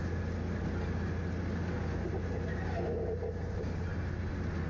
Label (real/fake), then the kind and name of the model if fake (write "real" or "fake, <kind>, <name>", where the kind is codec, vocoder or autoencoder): real